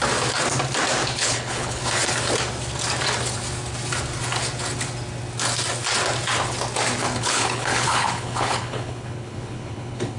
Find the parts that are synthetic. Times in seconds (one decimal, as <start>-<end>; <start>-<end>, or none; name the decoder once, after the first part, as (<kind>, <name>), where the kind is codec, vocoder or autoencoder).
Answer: 1.0-1.8 (codec, HILCodec); 7.0-10.2